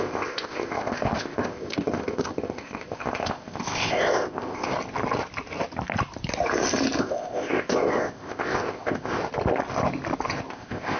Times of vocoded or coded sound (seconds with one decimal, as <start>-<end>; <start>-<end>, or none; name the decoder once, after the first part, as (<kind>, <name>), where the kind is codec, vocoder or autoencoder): 0.0-4.7 (codec, ZipCodec); 7.0-9.2; 10.5-11.0